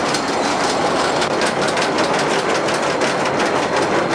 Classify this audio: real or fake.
real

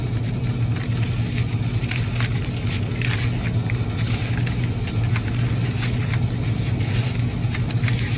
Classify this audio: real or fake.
real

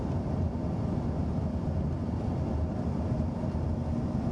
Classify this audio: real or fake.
real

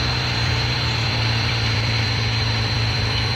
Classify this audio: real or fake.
fake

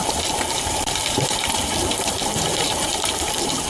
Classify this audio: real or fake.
fake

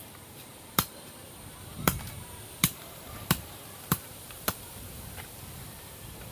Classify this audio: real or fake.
fake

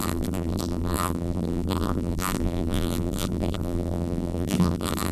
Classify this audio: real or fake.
fake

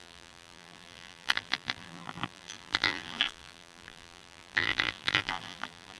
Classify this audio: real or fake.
fake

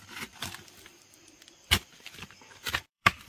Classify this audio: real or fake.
fake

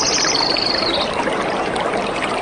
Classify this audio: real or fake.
real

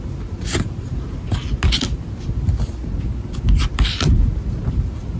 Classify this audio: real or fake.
real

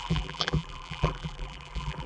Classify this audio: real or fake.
fake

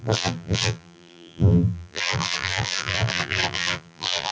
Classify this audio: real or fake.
fake